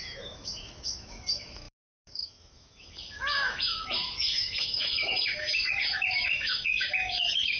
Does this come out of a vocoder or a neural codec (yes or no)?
yes